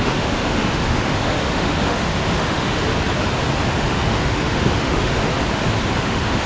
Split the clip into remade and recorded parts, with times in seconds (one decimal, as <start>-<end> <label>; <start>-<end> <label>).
0.0-2.8 remade; 2.8-3.8 recorded; 3.8-5.3 remade; 5.3-6.0 recorded; 6.0-6.5 remade